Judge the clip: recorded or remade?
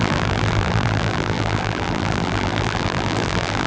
remade